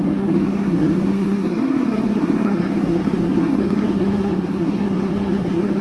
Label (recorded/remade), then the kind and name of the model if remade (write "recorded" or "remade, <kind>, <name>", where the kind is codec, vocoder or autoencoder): remade, codec, SNAC